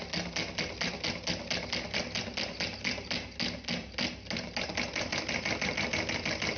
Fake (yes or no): no